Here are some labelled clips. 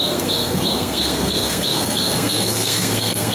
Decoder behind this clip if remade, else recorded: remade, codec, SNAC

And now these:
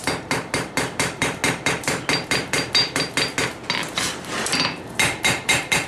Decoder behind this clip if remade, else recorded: recorded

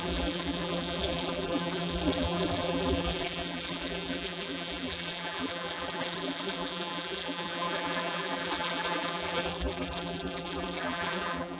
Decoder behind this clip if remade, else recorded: remade, vocoder, BigVGAN v2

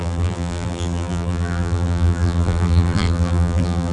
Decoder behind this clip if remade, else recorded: remade, vocoder, BigVGAN v2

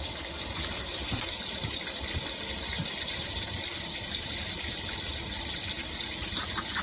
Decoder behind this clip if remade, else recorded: recorded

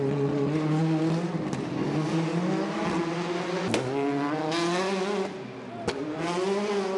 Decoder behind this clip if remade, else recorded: recorded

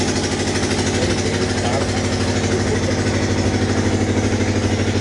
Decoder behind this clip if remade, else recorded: recorded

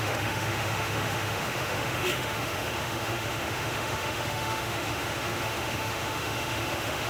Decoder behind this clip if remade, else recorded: remade, autoencoder, DAC-VAE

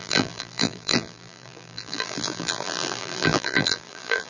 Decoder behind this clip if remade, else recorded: remade, vocoder, BigVGAN v2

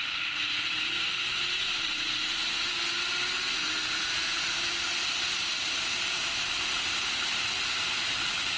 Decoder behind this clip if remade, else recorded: recorded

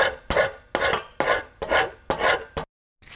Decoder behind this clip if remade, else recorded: recorded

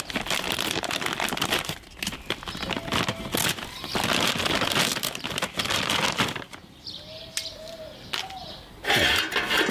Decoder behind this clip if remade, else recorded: recorded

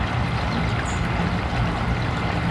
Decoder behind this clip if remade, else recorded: recorded